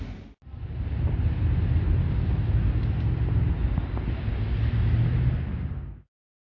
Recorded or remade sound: recorded